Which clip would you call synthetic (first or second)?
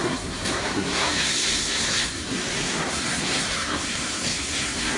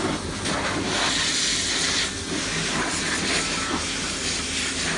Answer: first